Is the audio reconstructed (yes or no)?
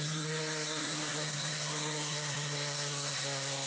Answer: yes